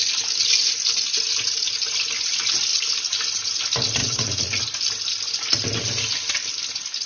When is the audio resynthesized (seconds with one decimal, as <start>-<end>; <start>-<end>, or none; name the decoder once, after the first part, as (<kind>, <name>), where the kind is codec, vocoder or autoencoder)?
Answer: 4.0-4.6 (vocoder, Vocos)